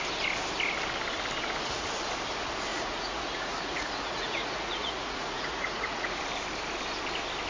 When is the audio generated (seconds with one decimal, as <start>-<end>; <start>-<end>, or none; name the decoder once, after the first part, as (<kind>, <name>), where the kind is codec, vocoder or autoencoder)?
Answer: 2.7-6.2 (vocoder, Vocos)